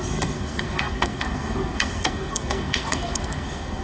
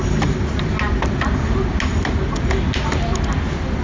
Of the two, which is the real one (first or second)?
second